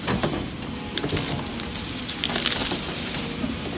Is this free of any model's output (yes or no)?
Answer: yes